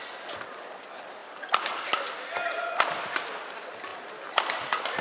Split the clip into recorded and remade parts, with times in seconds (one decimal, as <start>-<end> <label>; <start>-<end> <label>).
0.0-1.2 recorded; 1.2-2.3 remade; 2.3-3.9 recorded; 3.9-5.0 remade